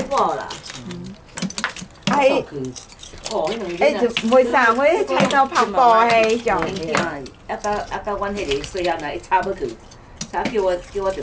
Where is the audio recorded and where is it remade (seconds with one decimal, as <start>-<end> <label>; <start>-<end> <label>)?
0.0-11.2 recorded